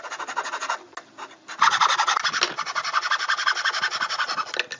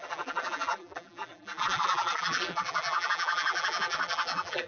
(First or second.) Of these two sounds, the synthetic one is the second